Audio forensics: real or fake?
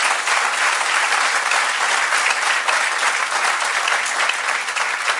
real